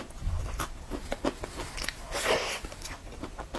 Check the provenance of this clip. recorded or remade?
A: recorded